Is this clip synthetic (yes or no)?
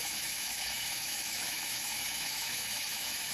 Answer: yes